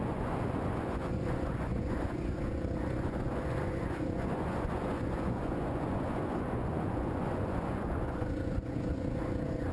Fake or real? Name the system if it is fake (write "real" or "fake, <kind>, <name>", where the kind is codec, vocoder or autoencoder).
fake, vocoder, Vocos